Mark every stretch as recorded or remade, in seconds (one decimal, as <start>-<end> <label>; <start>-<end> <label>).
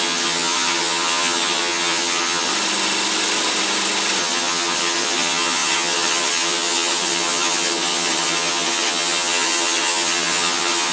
0.0-2.5 remade; 2.5-4.2 recorded; 4.2-10.9 remade